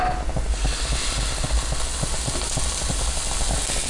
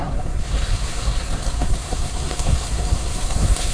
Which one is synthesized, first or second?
second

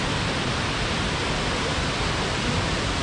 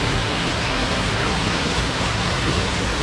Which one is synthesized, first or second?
second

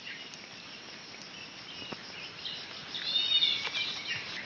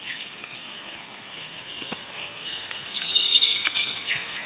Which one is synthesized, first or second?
second